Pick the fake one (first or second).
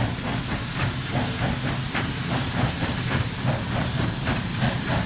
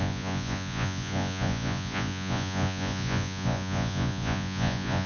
second